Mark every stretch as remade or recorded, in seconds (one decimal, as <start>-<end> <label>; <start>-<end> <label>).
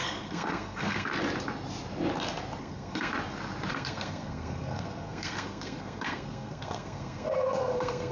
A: 0.0-1.1 remade; 1.1-2.6 recorded; 2.6-3.1 remade; 3.1-3.7 recorded; 3.7-8.1 remade